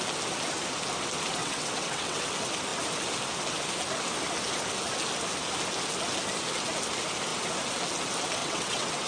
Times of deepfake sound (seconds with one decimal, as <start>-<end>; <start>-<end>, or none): 1.4-2.3; 8.4-9.1